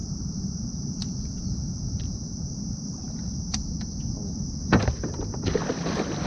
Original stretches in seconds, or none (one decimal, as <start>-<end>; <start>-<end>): 3.3-6.3